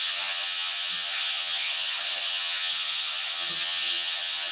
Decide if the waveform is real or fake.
fake